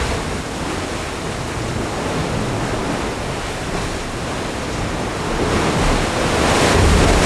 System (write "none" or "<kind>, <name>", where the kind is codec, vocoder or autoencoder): none